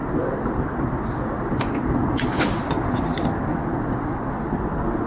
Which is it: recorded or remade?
recorded